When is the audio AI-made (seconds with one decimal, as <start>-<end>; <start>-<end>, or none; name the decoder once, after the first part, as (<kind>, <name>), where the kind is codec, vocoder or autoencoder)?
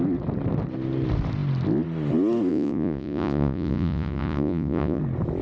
2.5-5.0 (vocoder, Vocos)